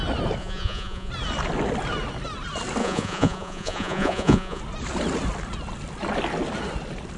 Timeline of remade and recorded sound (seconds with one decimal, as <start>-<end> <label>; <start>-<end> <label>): 0.0-0.4 recorded; 0.4-1.1 remade; 1.1-2.8 recorded; 2.8-4.6 remade; 4.6-7.2 recorded